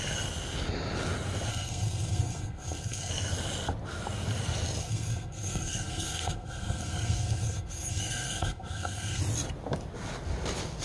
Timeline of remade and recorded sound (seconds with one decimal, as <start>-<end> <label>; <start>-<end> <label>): 0.0-1.5 recorded; 1.5-3.1 remade; 3.1-4.8 recorded; 4.8-9.2 remade; 9.2-10.8 recorded